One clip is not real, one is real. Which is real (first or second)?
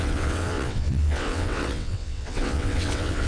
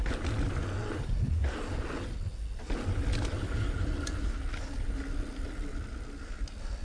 second